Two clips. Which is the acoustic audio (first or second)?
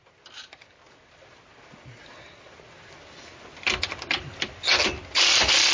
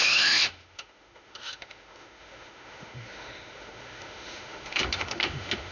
first